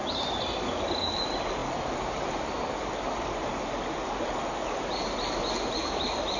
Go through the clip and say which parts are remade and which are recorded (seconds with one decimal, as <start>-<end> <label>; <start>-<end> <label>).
0.0-6.4 recorded